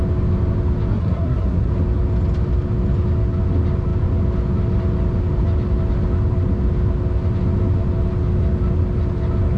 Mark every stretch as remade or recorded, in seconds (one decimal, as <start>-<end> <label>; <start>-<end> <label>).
0.0-0.9 recorded; 0.9-1.7 remade; 1.7-9.6 recorded